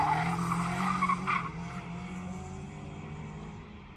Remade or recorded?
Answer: recorded